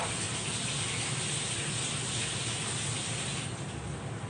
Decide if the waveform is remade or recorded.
recorded